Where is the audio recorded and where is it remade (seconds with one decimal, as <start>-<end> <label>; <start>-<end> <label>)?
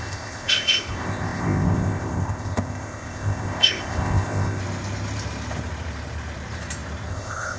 0.0-4.6 remade; 4.6-7.1 recorded; 7.1-7.6 remade